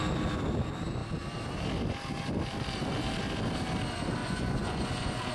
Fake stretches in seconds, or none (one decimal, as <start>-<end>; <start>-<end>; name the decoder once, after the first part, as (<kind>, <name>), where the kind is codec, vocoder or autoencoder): 4.2-5.3 (vocoder, Vocos)